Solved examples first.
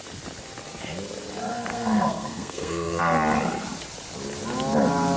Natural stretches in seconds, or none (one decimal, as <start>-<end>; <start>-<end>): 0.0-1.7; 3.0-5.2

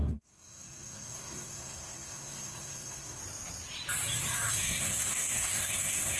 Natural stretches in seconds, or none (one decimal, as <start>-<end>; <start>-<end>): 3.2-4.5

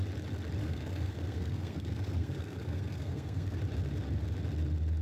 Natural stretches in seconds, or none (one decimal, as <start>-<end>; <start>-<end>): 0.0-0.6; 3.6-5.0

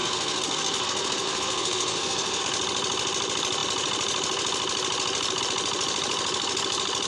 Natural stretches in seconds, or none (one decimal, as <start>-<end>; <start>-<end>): 2.4-7.1

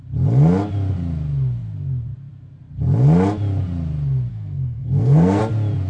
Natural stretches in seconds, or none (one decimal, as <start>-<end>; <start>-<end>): 0.0-4.3; 5.4-5.9